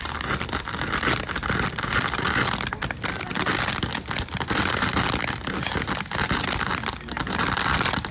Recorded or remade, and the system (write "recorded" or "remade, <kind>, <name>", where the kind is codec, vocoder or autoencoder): recorded